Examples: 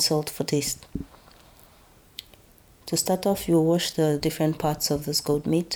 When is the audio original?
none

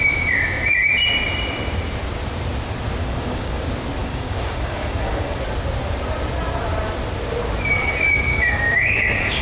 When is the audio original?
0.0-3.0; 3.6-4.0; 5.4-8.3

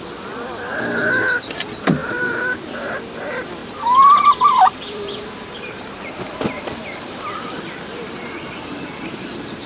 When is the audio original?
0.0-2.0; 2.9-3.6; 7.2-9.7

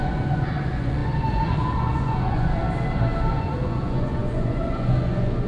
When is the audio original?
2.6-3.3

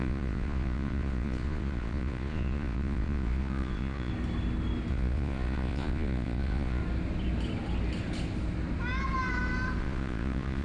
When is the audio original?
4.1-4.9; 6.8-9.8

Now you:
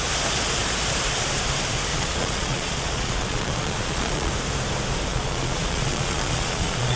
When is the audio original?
0.0-1.9; 4.3-5.1